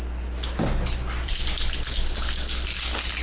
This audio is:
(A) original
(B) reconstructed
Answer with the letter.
A